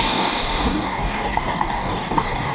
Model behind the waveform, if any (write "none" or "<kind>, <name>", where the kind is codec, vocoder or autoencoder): codec, DAC